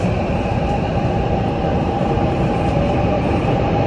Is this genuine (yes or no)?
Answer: no